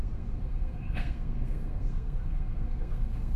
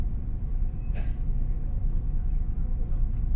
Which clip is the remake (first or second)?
first